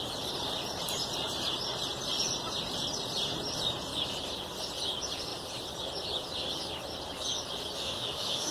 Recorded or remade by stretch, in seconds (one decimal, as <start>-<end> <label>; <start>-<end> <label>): 0.0-7.8 recorded; 7.8-8.5 remade